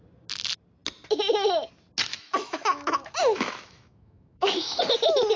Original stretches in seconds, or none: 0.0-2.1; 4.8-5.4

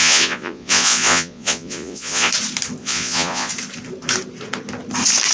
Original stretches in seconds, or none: 2.3-2.8; 3.5-5.3

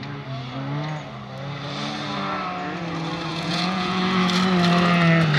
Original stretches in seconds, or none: 0.0-3.3; 4.0-5.4

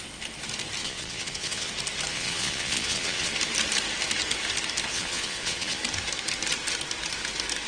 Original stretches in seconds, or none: 0.0-0.8; 1.7-2.1; 3.3-4.9; 5.8-7.7

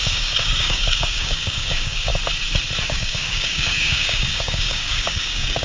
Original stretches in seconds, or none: 2.1-2.8

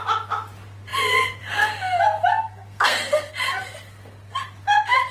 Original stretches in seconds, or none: 0.0-2.3; 3.3-5.1

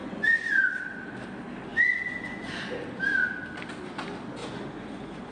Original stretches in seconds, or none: 0.8-1.7; 2.5-4.4